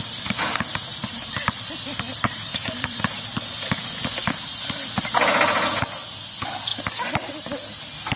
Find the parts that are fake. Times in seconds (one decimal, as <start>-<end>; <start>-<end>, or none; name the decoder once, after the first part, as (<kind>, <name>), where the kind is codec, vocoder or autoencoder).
0.9-3.1 (vocoder, BigVGAN v2)